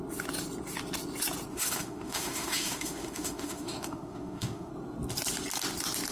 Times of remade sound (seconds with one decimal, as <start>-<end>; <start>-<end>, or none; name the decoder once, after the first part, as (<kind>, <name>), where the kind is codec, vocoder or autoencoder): 1.5-4.7 (autoencoder, DAC-VAE)